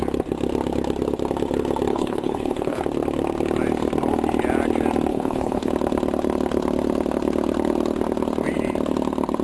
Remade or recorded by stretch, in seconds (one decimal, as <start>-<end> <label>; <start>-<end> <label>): 0.0-1.9 recorded; 1.9-2.8 remade; 2.8-5.1 recorded; 5.1-5.7 remade; 5.7-9.4 recorded